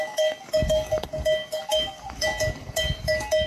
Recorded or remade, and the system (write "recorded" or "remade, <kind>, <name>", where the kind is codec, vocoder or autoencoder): remade, codec, DAC